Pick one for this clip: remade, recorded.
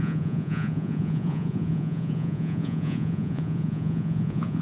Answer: remade